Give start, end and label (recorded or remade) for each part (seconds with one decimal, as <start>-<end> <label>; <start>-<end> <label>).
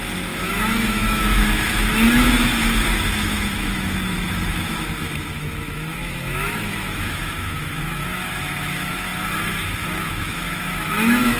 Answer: 0.0-9.1 remade; 9.1-10.1 recorded; 10.1-11.4 remade